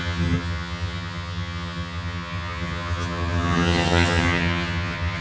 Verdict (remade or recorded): remade